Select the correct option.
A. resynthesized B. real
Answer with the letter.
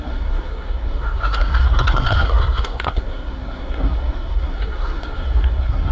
A